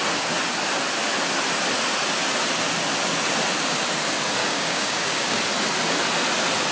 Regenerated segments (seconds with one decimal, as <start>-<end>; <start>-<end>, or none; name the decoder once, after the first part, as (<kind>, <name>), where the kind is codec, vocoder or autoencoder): 4.4-5.4 (codec, DAC)